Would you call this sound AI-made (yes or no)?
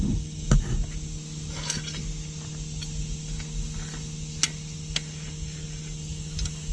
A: no